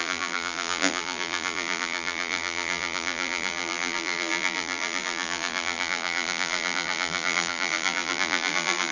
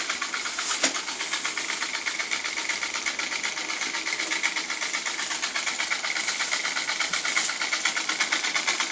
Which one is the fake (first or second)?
first